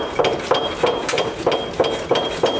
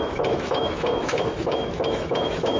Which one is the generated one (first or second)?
second